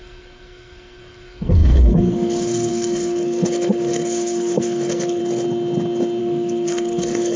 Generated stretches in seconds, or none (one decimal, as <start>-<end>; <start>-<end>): 0.0-5.2; 6.2-7.4